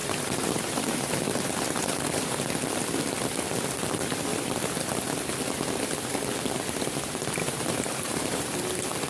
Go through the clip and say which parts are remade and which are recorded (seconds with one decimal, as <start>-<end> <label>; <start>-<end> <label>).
0.0-2.4 remade; 2.4-4.3 recorded; 4.3-5.0 remade; 5.0-7.4 recorded; 7.4-8.7 remade; 8.7-9.1 recorded